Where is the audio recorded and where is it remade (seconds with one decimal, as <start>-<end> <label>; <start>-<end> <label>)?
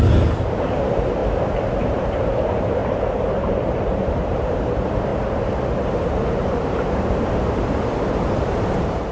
0.0-1.2 remade; 1.2-1.7 recorded; 1.7-2.8 remade; 2.8-4.0 recorded; 4.0-5.1 remade; 5.1-5.9 recorded; 5.9-9.1 remade